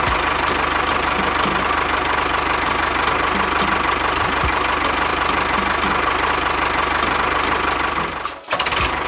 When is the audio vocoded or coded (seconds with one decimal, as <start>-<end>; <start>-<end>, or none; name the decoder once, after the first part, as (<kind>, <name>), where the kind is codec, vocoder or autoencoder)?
none